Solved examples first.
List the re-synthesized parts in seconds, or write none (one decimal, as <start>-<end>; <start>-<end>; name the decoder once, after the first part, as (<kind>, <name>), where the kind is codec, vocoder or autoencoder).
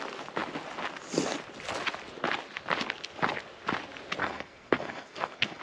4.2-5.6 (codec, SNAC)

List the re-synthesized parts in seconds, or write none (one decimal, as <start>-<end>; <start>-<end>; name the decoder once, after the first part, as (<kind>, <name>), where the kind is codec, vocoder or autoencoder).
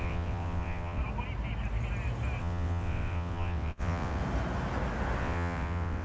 0.0-1.0 (vocoder, WaveNeXt); 2.4-4.2; 5.2-6.0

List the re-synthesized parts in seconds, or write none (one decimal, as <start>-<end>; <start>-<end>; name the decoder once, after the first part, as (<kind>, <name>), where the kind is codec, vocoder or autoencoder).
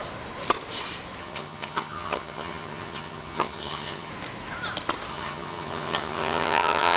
1.2-4.1 (vocoder, HiFi-GAN); 5.1-7.0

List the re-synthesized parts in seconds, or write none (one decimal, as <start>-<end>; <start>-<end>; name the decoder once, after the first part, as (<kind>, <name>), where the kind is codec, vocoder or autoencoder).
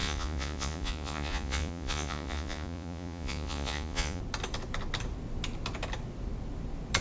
0.0-4.2 (vocoder, Vocos)